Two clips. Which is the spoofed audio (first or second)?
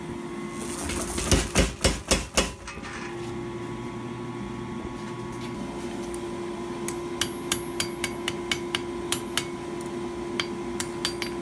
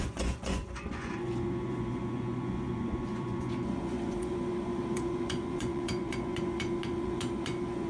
second